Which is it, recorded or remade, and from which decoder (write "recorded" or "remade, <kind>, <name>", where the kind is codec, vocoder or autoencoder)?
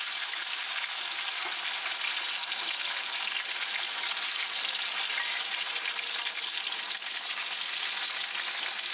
recorded